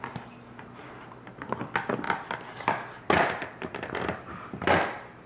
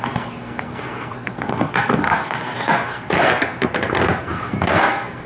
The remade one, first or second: second